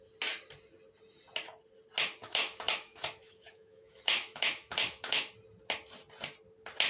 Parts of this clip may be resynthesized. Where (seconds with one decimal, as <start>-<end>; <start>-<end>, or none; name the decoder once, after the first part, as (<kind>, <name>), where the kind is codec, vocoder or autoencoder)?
2.2-5.3 (autoencoder, DAC-VAE)